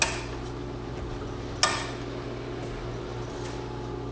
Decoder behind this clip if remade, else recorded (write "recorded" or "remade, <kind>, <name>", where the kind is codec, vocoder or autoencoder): recorded